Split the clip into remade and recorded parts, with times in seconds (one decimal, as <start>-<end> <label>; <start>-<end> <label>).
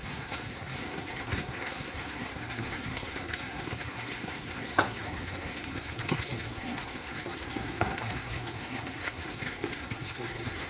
0.0-10.7 remade